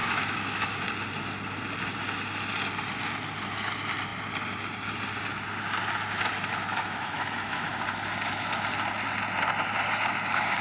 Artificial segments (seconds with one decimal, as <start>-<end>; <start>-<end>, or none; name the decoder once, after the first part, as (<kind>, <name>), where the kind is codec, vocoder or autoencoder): 0.0-0.8 (autoencoder, DAC-VAE); 6.7-7.7